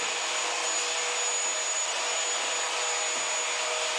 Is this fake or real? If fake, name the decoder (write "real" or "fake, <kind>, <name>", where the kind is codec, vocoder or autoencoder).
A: real